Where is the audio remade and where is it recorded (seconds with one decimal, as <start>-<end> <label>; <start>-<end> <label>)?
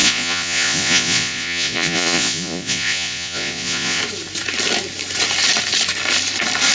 0.0-4.0 remade; 4.0-6.7 recorded